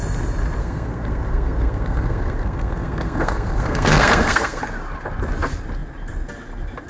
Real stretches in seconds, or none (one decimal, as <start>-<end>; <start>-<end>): 0.0-0.6; 4.6-6.9